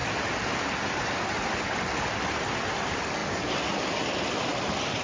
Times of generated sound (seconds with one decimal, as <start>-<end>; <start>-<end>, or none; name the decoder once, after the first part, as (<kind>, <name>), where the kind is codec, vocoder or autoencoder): 3.2-5.0 (vocoder, BigVGAN v2)